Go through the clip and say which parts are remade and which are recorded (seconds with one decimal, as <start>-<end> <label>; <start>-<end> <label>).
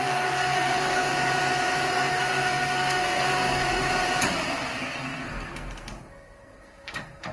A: 0.0-1.1 remade; 1.1-1.9 recorded; 1.9-3.9 remade; 3.9-4.8 recorded; 4.8-7.3 remade